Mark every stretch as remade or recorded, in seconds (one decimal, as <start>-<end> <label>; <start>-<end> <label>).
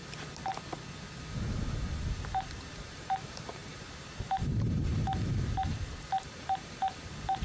0.0-1.2 recorded; 1.2-7.4 remade